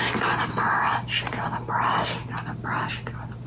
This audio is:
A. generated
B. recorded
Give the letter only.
B